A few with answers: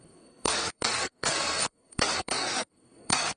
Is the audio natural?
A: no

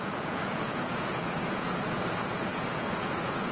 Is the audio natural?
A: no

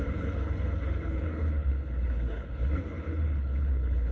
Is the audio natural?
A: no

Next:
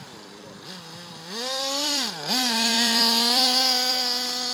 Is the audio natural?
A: no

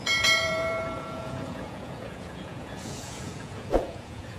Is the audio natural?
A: no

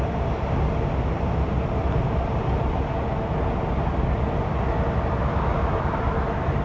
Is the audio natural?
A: yes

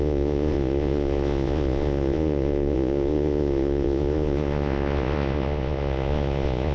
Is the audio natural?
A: no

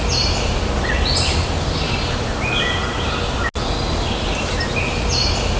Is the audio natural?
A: yes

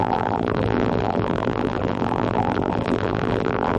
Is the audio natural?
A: no